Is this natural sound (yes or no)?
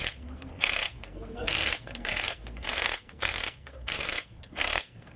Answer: no